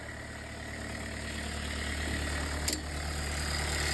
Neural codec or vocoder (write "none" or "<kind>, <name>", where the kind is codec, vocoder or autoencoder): none